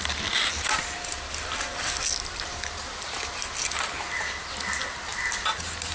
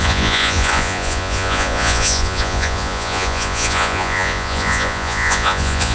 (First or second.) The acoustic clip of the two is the first